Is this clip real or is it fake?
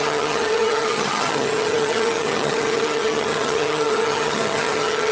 fake